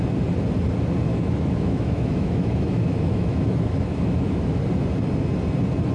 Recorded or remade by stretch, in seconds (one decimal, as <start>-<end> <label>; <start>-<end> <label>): 0.0-1.1 recorded; 1.1-4.6 remade; 4.6-5.9 recorded